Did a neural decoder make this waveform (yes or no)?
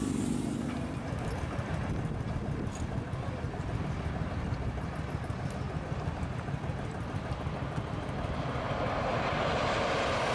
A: no